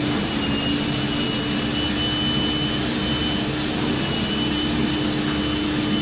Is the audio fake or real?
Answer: real